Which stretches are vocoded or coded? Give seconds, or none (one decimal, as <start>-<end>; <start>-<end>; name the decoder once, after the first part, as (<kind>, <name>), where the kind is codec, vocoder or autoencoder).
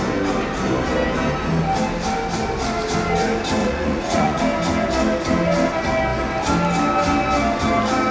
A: 3.6-4.4 (vocoder, Vocos)